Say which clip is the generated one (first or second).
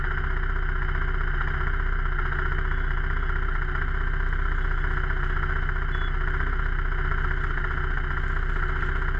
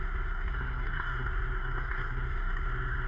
second